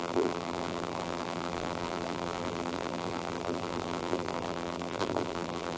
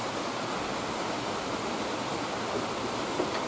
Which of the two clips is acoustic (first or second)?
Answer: second